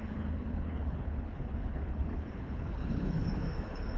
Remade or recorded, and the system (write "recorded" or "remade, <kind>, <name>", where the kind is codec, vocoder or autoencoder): remade, codec, HILCodec